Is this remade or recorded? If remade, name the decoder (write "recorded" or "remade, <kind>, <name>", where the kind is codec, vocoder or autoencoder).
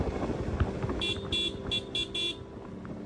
recorded